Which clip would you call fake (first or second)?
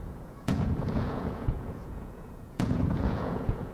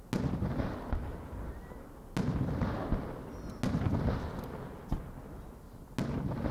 first